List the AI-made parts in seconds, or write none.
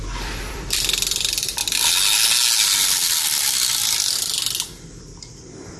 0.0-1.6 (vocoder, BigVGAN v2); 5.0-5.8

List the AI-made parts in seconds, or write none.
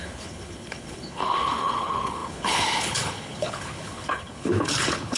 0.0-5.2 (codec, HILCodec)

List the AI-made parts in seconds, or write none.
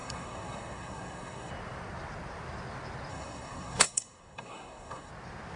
0.0-1.5 (codec, SNAC); 3.1-5.1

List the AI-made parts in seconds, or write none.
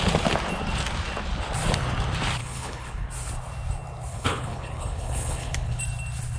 2.4-3.1 (codec, HILCodec); 4.1-5.8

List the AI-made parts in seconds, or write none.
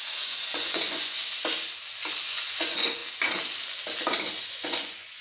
0.0-1.2 (vocoder, Vocos); 2.2-3.0; 4.4-5.2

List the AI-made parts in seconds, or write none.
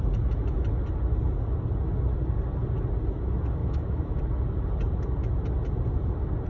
3.6-4.2 (autoencoder, DAC-VAE)